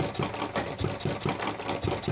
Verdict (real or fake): real